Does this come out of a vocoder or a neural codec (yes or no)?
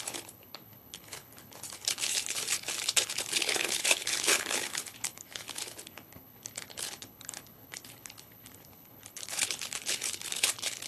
yes